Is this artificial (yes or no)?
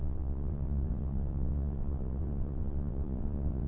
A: yes